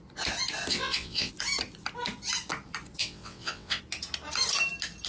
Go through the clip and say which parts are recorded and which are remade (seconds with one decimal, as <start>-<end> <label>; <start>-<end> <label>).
0.0-0.7 recorded; 0.7-1.3 remade; 1.3-3.0 recorded; 3.0-3.8 remade; 3.8-5.1 recorded